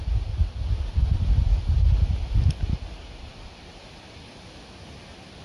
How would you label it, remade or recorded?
recorded